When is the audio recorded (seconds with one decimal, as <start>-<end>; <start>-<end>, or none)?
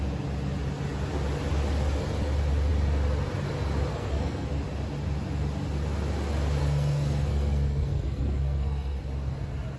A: 0.0-3.9; 4.5-6.6; 9.0-9.8